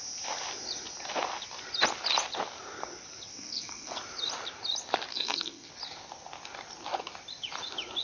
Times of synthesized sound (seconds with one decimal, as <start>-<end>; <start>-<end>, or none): 3.3-4.0; 5.1-5.7